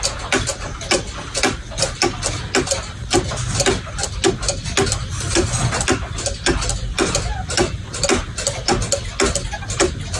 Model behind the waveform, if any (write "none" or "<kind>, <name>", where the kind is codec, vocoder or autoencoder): none